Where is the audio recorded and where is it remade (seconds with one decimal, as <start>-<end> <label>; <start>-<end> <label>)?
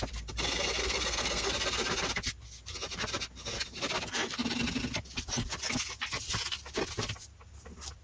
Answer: 0.0-0.8 recorded; 0.8-1.5 remade; 1.5-8.0 recorded